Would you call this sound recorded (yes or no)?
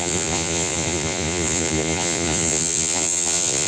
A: no